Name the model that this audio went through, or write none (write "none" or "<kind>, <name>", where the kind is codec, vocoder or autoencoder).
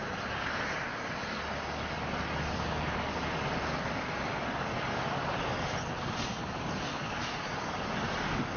none